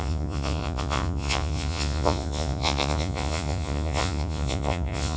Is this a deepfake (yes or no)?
yes